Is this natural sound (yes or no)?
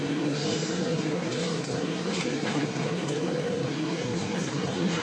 no